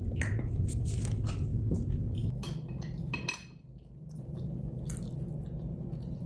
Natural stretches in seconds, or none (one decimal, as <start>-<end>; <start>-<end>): 0.0-6.3